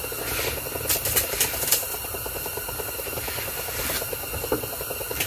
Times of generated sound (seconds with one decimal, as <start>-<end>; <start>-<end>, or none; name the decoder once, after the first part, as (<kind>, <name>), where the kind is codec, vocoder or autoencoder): 0.9-4.1 (vocoder, BigVGAN v2)